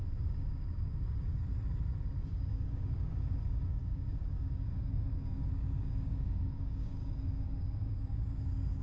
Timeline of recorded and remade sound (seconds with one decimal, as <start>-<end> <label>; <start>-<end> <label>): 0.0-1.3 remade; 1.3-2.3 recorded; 2.3-8.8 remade